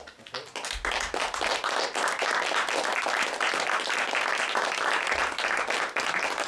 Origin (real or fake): real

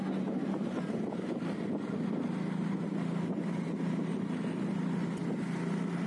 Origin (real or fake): real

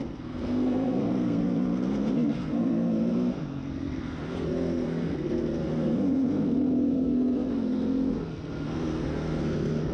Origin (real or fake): fake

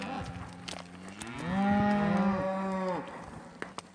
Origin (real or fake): real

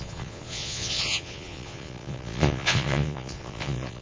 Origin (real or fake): fake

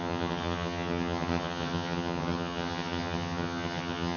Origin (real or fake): fake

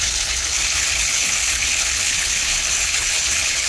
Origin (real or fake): fake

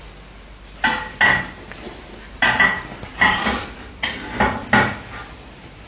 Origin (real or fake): real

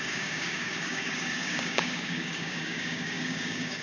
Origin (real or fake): fake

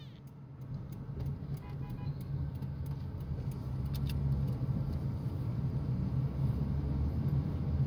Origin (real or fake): real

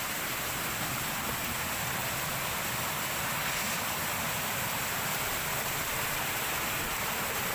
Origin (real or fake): real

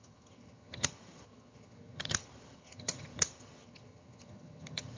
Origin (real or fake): fake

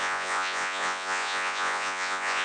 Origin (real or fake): fake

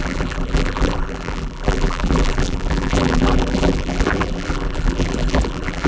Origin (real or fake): fake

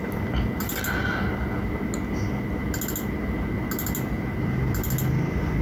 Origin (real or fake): real